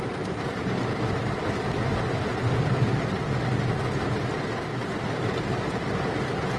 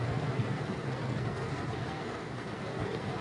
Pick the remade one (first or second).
second